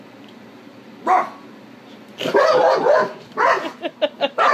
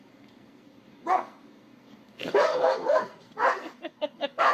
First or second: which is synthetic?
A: second